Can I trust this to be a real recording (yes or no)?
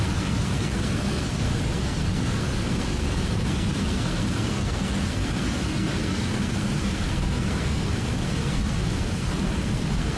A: no